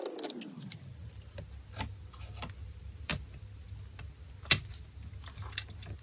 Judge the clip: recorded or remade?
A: recorded